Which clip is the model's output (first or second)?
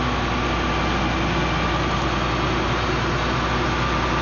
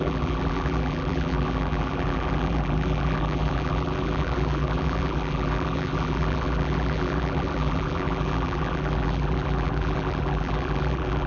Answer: second